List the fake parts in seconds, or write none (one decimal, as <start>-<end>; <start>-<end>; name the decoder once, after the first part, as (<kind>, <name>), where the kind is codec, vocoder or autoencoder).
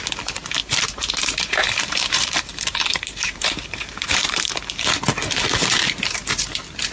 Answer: 0.6-4.5 (vocoder, BigVGAN v2); 5.6-6.3